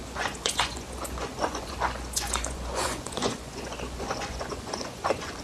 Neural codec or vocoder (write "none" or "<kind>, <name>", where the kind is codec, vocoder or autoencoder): vocoder, Vocos